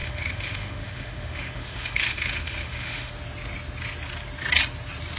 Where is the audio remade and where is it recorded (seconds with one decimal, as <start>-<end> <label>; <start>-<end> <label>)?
0.0-3.1 remade; 3.1-5.2 recorded